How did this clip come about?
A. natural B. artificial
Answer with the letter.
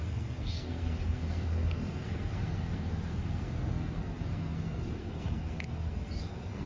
B